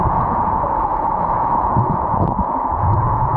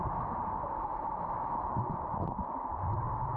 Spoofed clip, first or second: first